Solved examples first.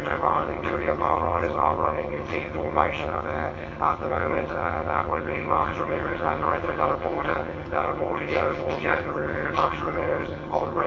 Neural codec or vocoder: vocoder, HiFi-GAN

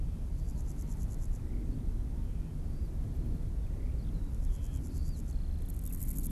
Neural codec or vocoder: none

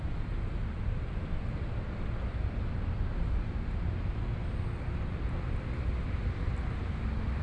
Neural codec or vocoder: none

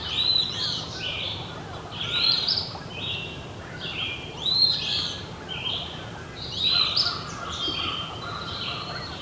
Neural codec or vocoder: vocoder, BigVGAN v2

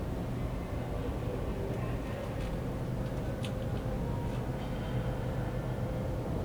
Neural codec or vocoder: none